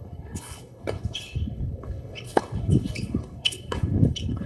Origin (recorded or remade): remade